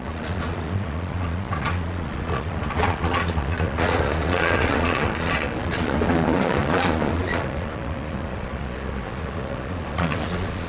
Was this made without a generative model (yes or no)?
no